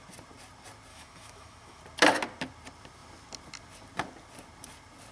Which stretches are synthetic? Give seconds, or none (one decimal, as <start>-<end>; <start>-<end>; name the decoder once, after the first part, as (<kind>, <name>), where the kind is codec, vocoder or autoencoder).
0.9-1.8 (autoencoder, DAC-VAE)